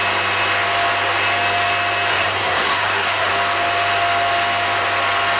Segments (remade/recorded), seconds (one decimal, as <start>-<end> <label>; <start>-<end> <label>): 0.0-2.1 recorded; 2.1-3.3 remade; 3.3-5.4 recorded